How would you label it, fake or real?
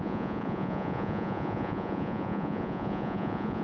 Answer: fake